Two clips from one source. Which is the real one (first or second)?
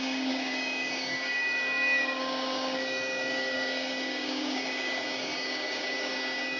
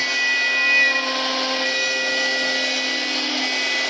second